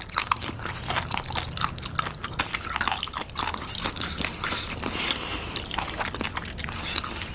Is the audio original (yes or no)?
yes